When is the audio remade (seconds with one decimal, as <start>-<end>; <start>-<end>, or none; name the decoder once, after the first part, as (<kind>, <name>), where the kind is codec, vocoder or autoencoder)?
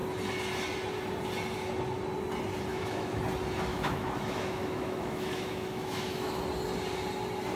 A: 2.7-3.2 (autoencoder, DAC-VAE); 3.7-6.4